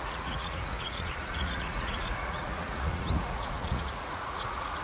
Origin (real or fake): fake